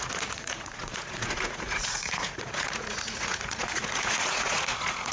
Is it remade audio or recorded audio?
remade